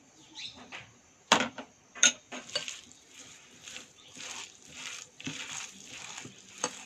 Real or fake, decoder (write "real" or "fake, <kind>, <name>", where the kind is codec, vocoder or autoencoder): fake, vocoder, BigVGAN v2